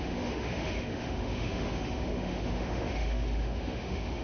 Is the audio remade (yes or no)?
yes